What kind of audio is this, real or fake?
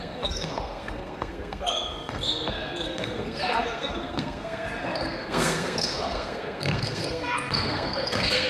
fake